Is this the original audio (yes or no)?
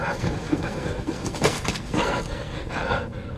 no